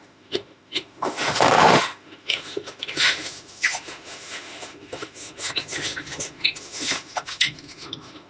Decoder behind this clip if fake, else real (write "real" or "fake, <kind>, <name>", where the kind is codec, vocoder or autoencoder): fake, autoencoder, DAC-VAE